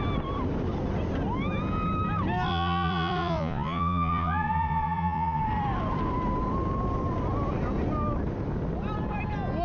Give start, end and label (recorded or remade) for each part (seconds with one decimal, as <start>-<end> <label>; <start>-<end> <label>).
0.0-2.5 recorded; 2.5-5.4 remade; 5.4-9.6 recorded